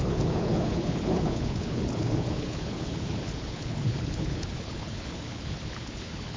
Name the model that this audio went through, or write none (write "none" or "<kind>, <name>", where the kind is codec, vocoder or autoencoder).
codec, HILCodec